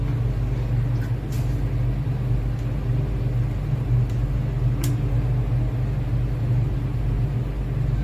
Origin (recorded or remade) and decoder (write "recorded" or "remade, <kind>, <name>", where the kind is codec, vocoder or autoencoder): recorded